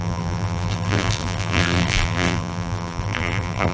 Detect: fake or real fake